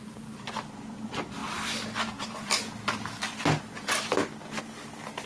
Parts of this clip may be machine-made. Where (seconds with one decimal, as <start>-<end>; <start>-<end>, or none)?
none

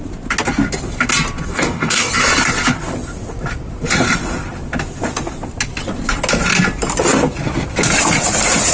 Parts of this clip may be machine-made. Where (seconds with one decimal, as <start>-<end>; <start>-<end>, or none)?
1.5-2.1